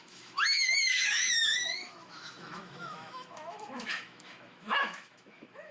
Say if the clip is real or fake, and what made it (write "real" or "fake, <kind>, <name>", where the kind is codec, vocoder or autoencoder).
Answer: fake, autoencoder, DAC-VAE